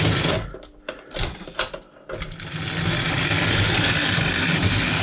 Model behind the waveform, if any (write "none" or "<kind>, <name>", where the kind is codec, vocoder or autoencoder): none